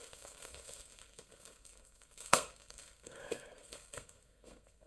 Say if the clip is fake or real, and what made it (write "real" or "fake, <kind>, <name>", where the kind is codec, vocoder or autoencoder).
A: fake, codec, SNAC